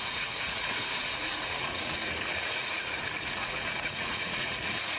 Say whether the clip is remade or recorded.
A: remade